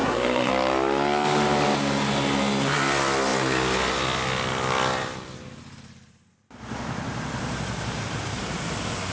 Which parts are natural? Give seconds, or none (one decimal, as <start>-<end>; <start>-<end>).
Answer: 0.5-9.1